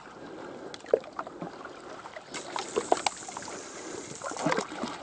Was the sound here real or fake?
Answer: real